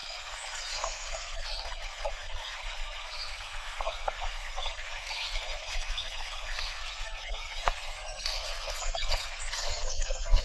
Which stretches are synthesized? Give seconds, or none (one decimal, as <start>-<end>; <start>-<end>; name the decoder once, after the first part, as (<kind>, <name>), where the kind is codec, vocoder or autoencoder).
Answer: 0.0-10.4 (codec, SNAC)